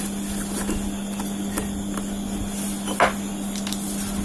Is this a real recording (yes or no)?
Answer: yes